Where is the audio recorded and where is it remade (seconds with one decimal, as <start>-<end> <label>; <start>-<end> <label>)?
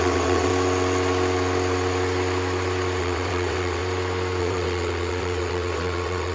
0.0-0.5 remade; 0.5-3.0 recorded; 3.0-3.8 remade; 3.8-4.4 recorded; 4.4-6.3 remade